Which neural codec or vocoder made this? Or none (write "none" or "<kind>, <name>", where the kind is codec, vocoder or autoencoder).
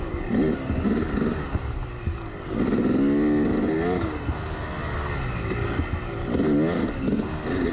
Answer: none